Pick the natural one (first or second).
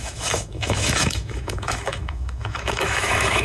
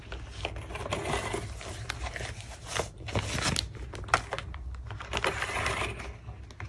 second